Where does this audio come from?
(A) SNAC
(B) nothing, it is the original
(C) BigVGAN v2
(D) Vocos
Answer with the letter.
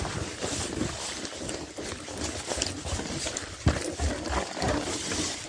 B